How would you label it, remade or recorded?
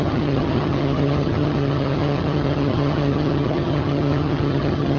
remade